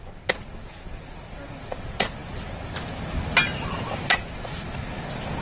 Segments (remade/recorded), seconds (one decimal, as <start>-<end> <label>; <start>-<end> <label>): 0.0-5.4 recorded